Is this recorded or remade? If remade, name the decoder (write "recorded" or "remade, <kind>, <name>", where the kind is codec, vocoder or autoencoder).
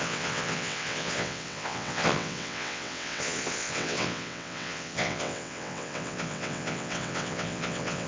remade, vocoder, WaveNeXt